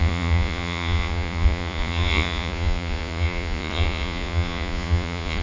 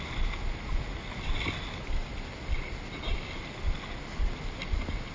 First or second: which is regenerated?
first